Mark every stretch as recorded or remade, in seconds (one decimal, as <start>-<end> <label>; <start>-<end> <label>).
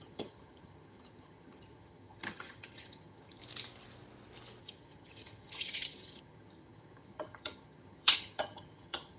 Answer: 0.0-3.4 remade; 3.4-4.6 recorded; 4.6-9.2 remade